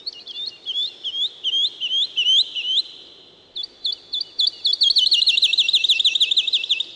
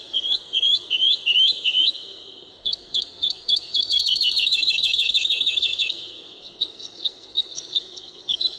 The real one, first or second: first